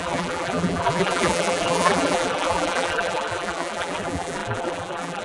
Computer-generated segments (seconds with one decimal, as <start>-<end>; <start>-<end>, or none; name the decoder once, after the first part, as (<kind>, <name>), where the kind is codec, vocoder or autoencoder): 0.0-5.2 (vocoder, BigVGAN v2)